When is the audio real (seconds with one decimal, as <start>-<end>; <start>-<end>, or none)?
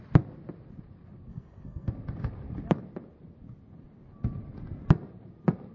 0.0-1.3; 1.9-5.7